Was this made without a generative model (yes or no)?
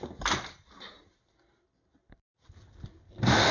no